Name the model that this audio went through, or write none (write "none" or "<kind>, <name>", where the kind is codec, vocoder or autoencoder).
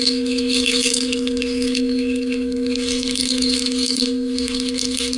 codec, SNAC